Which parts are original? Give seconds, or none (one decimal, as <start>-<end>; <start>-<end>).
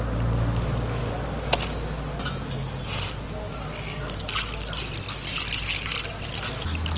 0.0-7.0